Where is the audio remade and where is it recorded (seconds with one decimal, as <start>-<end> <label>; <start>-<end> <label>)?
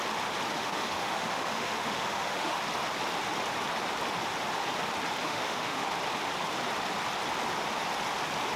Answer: 0.0-0.6 recorded; 0.6-2.6 remade; 2.6-5.2 recorded; 5.2-5.9 remade; 5.9-8.6 recorded